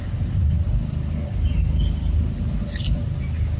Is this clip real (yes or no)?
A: no